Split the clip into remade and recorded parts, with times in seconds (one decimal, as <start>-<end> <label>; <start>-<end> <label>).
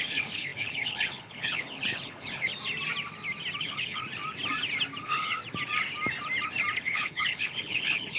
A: 0.0-2.5 remade; 2.5-3.6 recorded; 3.6-4.0 remade; 4.0-5.0 recorded; 5.0-5.4 remade; 5.4-6.8 recorded; 6.8-8.2 remade